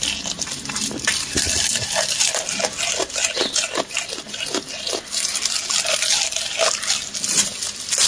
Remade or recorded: recorded